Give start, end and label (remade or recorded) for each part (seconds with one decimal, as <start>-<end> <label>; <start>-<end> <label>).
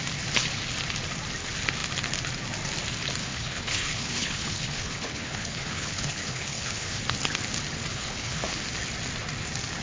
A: 0.0-3.2 recorded; 3.2-7.0 remade; 7.0-7.9 recorded; 7.9-8.6 remade; 8.6-9.8 recorded